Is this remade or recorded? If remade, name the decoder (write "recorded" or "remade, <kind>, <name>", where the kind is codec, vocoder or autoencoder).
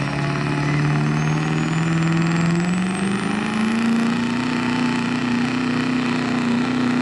recorded